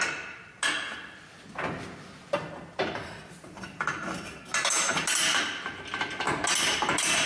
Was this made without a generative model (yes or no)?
yes